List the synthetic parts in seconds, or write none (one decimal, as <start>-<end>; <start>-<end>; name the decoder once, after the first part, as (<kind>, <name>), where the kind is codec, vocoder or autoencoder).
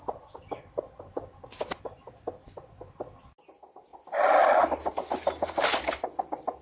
none